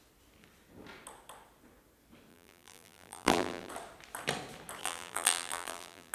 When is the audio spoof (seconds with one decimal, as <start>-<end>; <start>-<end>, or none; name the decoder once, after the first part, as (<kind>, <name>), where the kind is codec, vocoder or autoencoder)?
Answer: 2.3-3.7 (vocoder, BigVGAN v2); 4.8-6.1